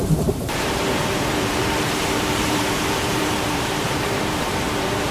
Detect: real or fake fake